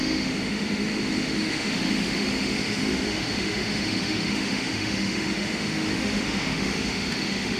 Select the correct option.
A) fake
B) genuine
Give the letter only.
A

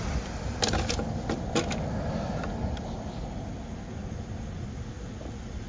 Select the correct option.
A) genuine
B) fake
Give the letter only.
A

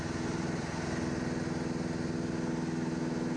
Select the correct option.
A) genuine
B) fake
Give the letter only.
A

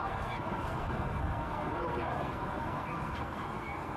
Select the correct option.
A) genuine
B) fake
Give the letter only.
B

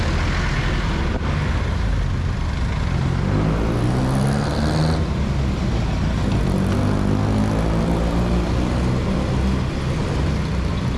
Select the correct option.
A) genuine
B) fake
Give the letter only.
A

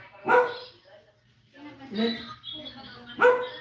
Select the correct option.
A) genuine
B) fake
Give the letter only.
A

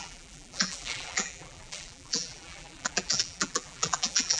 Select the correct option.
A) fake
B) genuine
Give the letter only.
A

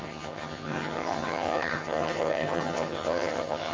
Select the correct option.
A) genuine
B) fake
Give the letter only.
B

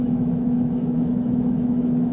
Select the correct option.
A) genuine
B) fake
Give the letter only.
B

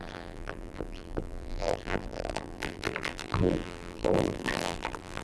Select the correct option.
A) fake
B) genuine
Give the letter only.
A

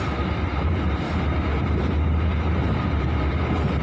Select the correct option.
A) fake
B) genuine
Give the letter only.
B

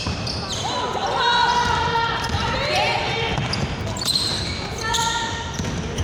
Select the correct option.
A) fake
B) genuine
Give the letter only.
B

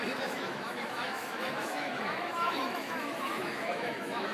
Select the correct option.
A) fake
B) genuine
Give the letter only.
A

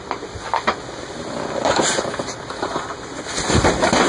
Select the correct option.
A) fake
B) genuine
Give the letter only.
B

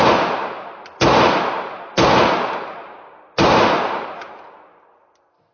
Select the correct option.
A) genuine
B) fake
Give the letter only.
A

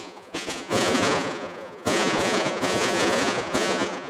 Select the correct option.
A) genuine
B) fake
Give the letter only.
B